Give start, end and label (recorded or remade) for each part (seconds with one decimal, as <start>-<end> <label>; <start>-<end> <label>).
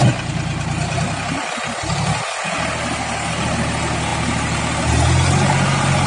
0.0-6.1 recorded